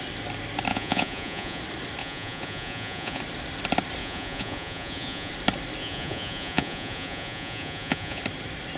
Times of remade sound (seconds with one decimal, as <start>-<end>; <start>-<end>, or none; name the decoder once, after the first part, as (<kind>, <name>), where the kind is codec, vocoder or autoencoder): 0.7-1.6 (vocoder, Vocos); 2.0-3.2; 4.0-5.3; 5.8-8.2